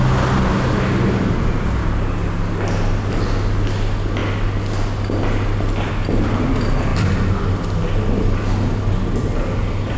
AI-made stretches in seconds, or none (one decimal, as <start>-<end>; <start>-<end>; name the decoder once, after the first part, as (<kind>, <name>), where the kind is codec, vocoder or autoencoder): none